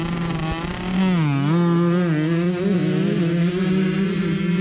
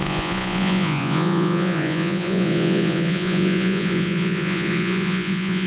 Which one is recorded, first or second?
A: first